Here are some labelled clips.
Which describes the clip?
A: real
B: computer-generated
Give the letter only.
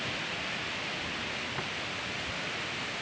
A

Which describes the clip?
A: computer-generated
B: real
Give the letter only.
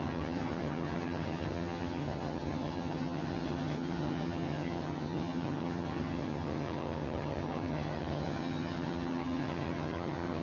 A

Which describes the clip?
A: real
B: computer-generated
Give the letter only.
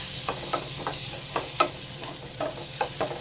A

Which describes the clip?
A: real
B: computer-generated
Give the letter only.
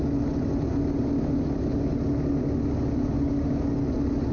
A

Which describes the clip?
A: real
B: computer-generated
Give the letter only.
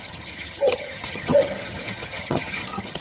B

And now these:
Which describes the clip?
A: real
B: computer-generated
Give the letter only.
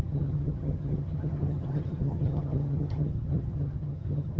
B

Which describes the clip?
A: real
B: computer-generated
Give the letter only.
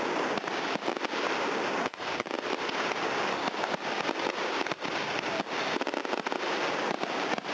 A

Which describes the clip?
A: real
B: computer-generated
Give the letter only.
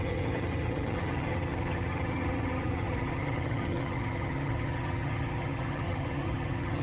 B